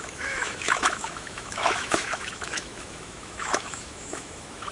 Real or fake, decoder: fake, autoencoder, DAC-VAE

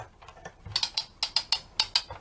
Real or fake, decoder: real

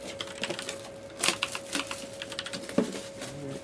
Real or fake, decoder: real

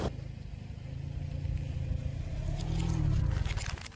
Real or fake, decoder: real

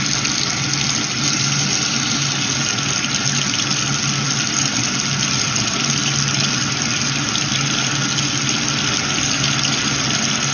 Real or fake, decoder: real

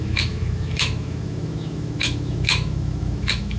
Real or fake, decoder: fake, autoencoder, DAC-VAE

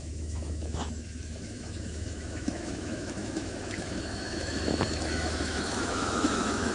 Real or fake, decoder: fake, autoencoder, DAC-VAE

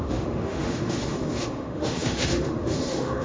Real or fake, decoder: fake, autoencoder, DAC-VAE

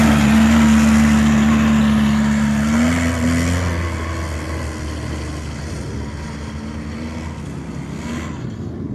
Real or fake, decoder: real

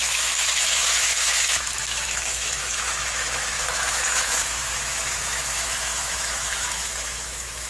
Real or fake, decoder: fake, autoencoder, DAC-VAE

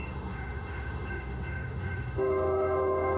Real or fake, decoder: fake, autoencoder, DAC-VAE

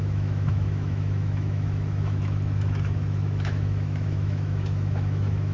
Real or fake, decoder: fake, autoencoder, DAC-VAE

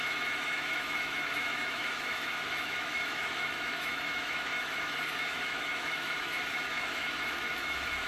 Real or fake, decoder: fake, autoencoder, DAC-VAE